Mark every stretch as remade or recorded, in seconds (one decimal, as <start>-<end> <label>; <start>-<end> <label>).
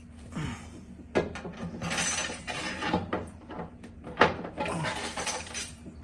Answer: 0.0-2.2 recorded; 2.2-4.5 remade; 4.5-5.1 recorded; 5.1-6.0 remade